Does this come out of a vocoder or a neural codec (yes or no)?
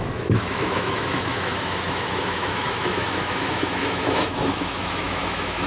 yes